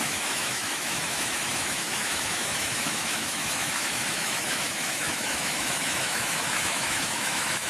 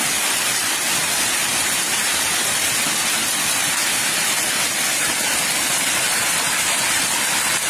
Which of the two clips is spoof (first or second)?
first